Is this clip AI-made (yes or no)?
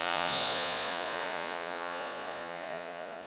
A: yes